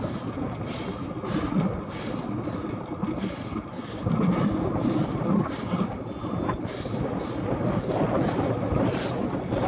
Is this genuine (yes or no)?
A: yes